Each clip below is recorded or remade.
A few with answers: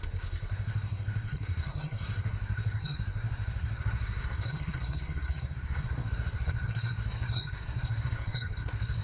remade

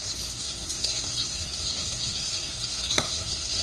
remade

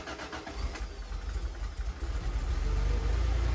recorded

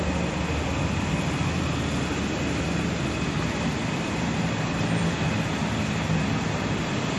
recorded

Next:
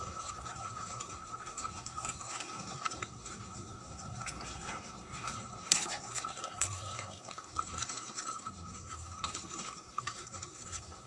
remade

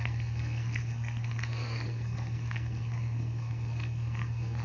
remade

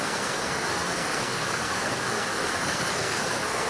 remade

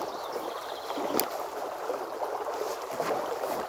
recorded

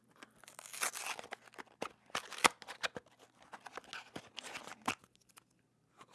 recorded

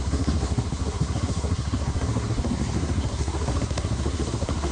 remade